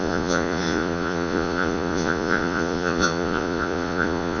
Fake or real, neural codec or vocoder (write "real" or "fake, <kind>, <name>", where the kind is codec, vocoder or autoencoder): fake, vocoder, Vocos